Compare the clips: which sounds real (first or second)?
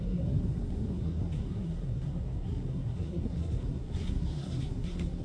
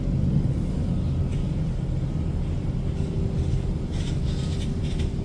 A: second